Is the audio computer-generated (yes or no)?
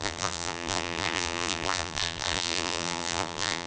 yes